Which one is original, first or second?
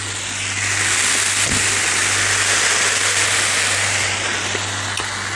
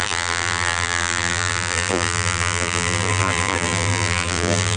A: first